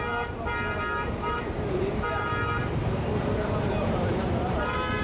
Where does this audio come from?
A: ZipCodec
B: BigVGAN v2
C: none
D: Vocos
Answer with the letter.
B